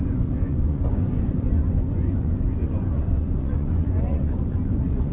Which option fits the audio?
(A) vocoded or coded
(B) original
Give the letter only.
A